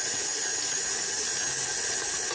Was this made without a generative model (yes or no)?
yes